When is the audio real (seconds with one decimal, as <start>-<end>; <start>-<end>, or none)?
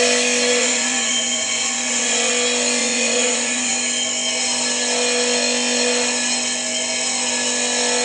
0.0-0.6; 2.3-2.8; 3.7-8.0